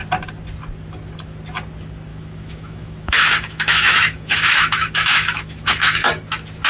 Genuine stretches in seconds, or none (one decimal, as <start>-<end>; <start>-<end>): 0.0-2.1; 6.1-6.7